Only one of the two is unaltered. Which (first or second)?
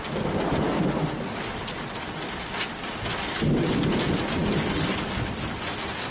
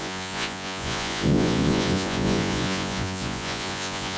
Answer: first